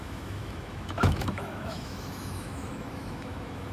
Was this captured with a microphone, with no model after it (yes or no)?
no